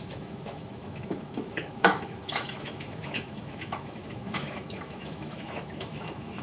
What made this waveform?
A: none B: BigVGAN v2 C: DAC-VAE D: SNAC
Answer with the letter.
C